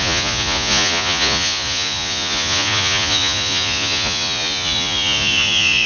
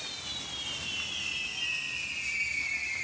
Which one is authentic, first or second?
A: second